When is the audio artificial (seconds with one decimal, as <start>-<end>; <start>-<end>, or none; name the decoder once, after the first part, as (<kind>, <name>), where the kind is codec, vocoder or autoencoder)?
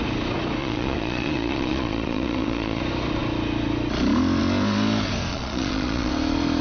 0.6-2.8 (vocoder, Vocos); 5.3-6.1